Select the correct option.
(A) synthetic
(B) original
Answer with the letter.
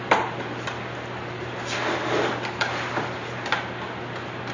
B